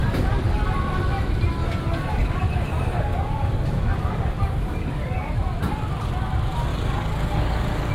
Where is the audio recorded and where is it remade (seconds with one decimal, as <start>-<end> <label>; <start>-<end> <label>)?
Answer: 0.0-0.7 remade; 0.7-1.6 recorded; 1.6-5.3 remade; 5.3-6.7 recorded; 6.7-7.9 remade